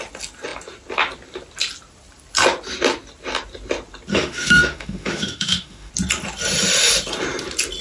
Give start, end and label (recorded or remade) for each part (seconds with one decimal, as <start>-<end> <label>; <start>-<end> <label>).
0.0-4.1 recorded; 4.1-5.9 remade; 5.9-7.8 recorded